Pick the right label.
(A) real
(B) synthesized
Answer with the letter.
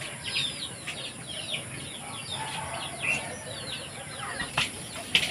A